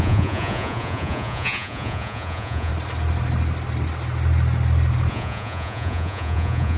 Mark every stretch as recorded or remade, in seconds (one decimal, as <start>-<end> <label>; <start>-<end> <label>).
0.0-2.7 remade; 2.7-5.1 recorded; 5.1-6.8 remade